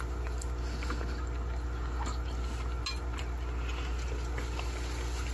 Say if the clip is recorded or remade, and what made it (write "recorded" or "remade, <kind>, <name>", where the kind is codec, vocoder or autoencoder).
recorded